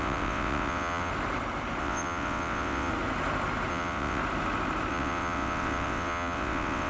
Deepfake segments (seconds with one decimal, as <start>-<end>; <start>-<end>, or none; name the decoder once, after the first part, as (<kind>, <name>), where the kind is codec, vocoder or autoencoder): 0.0-1.1 (vocoder, WaveNeXt); 1.8-2.9; 3.7-4.2; 4.9-6.9